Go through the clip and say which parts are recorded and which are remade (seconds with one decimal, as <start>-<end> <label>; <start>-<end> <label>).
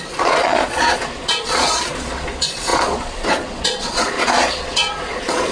0.0-5.5 remade